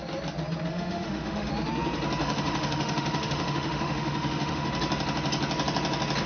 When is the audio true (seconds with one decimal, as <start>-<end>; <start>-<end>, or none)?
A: 0.0-0.7; 1.5-2.2; 4.7-6.3